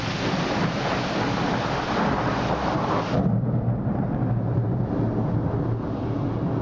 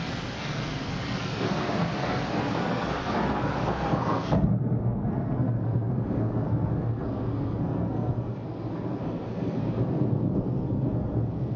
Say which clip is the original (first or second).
first